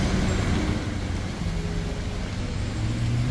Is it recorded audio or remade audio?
recorded